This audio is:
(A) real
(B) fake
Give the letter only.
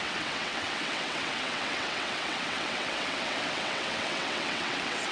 B